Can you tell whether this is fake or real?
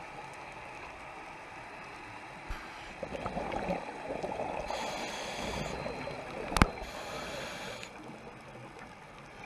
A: real